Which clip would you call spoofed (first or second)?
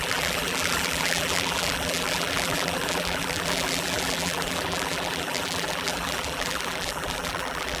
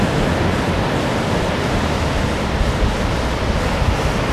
first